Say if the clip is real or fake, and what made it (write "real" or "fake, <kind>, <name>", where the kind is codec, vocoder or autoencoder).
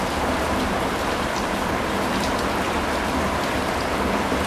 fake, vocoder, BigVGAN v2